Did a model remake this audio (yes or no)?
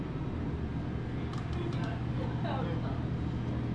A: no